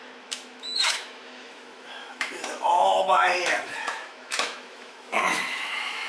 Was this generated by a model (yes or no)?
yes